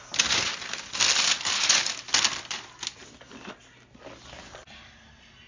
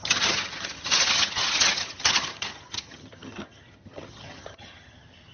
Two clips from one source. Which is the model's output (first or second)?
second